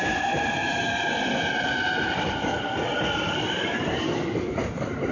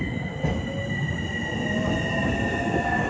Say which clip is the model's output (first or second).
first